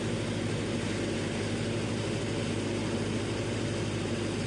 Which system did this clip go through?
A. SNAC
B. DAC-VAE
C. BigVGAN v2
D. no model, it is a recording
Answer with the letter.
D